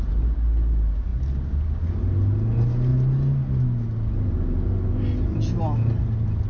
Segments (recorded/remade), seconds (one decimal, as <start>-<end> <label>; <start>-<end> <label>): 0.0-6.5 recorded

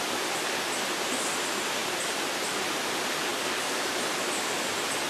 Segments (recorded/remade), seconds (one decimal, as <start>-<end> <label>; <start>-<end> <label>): 0.0-3.3 recorded; 3.3-3.9 remade; 3.9-5.1 recorded

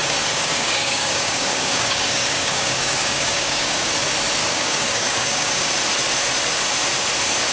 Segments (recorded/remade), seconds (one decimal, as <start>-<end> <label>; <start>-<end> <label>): 0.0-3.9 remade; 3.9-4.4 recorded; 4.4-5.7 remade; 5.7-7.5 recorded

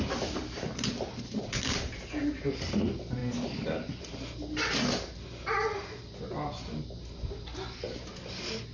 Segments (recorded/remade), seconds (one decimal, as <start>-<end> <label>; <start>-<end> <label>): 0.0-8.7 recorded